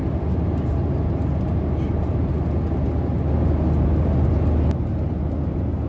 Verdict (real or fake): real